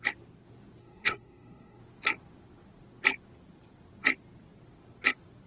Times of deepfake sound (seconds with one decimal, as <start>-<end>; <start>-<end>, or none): 0.8-1.8